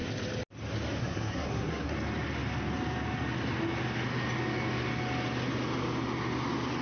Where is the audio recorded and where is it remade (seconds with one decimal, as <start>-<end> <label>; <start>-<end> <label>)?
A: 0.0-1.0 recorded; 1.0-1.9 remade; 1.9-6.8 recorded